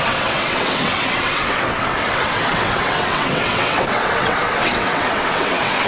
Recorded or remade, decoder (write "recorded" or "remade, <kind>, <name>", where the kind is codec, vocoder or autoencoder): remade, vocoder, WaveNeXt